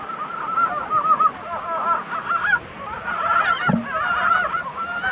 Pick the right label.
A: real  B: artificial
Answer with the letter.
A